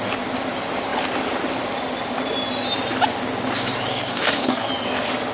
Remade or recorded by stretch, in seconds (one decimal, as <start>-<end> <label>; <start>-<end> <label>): 0.0-3.9 recorded; 3.9-4.7 remade; 4.7-5.3 recorded